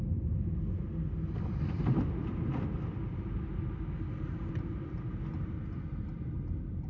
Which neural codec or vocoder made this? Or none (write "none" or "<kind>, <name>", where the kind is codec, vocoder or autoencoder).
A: none